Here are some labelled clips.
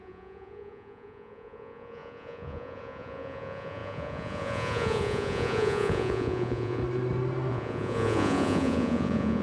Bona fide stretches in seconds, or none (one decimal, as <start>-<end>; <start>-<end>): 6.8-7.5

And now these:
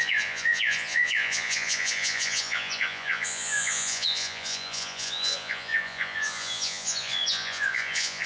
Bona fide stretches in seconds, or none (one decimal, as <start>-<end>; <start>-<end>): none

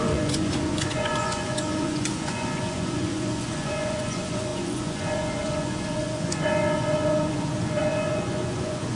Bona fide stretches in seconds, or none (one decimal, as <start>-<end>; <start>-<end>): none

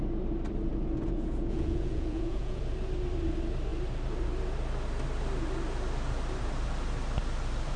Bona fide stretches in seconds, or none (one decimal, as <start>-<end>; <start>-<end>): 0.0-0.7; 2.6-7.8

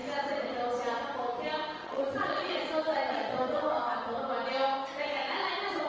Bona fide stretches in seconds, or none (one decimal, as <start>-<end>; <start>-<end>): 0.0-1.8; 3.7-5.9

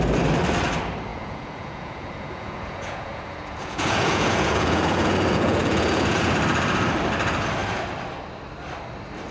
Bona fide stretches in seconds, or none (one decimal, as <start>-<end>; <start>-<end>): 0.0-1.1; 6.3-9.3

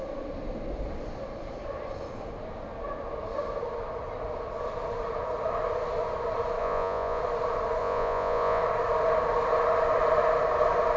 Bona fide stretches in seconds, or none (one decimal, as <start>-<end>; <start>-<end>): 0.0-6.6; 7.2-7.8; 8.6-11.0

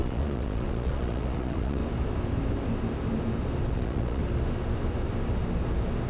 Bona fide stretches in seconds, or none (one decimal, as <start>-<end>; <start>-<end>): 1.8-3.7; 4.2-6.1